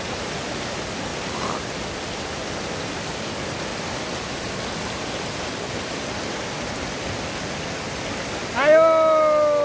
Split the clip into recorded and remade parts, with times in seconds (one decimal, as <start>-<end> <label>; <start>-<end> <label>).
0.0-9.6 recorded